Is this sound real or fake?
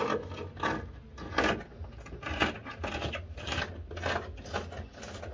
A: real